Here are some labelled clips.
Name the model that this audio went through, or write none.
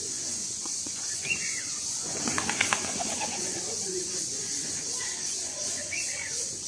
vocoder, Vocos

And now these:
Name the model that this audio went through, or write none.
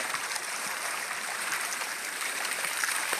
vocoder, BigVGAN v2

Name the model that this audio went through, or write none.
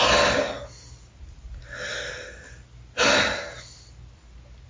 none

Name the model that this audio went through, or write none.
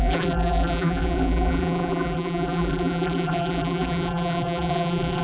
vocoder, BigVGAN v2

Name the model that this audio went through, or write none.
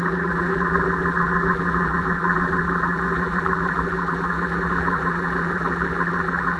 vocoder, BigVGAN v2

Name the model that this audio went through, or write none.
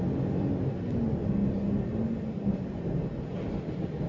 none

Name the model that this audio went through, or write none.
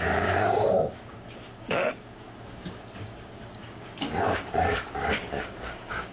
codec, DAC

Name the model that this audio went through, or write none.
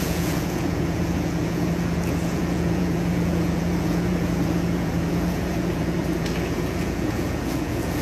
vocoder, Vocos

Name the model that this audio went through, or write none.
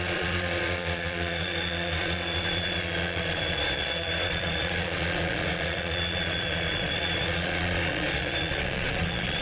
vocoder, Vocos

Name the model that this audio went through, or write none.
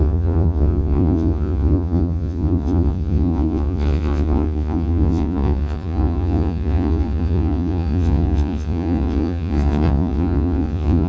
vocoder, Vocos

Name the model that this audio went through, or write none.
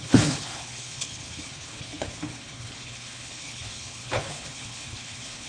codec, HILCodec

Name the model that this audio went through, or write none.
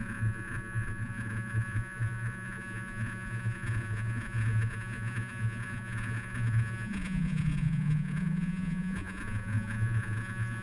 vocoder, Vocos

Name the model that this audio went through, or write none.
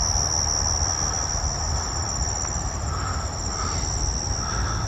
none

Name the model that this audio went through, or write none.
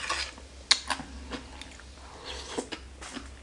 none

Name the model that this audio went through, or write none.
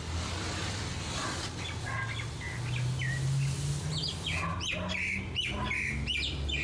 none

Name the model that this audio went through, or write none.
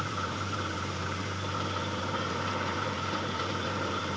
vocoder, BigVGAN v2